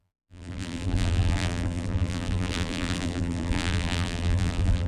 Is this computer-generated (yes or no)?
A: yes